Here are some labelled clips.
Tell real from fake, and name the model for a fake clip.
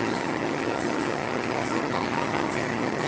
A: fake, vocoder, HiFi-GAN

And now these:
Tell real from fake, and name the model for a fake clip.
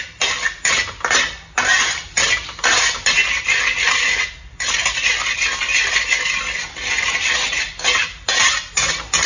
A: real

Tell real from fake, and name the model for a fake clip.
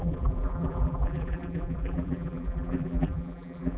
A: fake, vocoder, BigVGAN v2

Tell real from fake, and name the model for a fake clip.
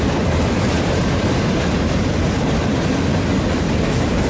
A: real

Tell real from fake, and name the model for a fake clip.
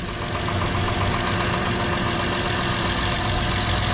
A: real